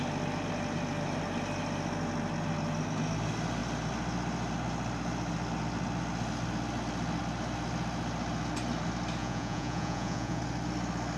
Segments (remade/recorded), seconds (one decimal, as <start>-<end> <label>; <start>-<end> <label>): 0.0-9.2 recorded; 9.2-10.4 remade; 10.4-11.2 recorded